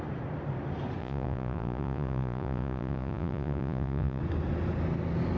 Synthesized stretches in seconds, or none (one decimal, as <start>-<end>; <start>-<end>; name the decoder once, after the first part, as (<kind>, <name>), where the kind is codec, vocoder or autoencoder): 1.0-4.2 (vocoder, Vocos)